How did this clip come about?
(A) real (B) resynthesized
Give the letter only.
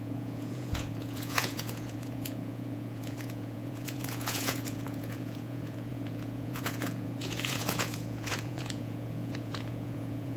B